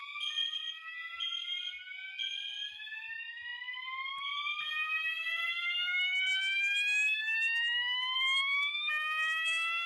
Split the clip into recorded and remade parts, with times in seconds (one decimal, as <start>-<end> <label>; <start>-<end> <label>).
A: 0.0-6.3 recorded; 6.3-9.9 remade